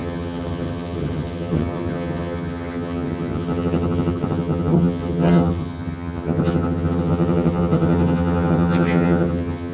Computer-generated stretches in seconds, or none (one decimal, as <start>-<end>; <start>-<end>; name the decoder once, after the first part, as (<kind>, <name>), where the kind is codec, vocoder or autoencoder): 0.0-9.7 (vocoder, HiFi-GAN)